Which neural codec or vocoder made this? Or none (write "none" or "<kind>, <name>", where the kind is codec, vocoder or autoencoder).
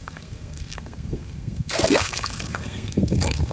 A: codec, SNAC